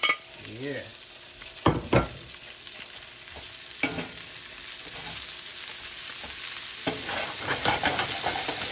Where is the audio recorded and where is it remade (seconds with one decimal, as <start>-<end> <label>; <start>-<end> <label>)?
0.0-8.7 recorded